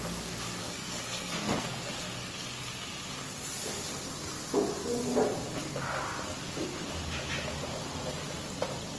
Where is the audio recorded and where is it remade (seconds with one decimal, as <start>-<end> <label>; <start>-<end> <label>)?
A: 0.0-0.6 recorded; 0.6-1.9 remade; 1.9-9.0 recorded